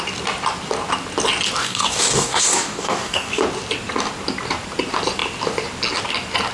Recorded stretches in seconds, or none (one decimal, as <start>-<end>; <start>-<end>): 0.0-1.6; 3.4-6.5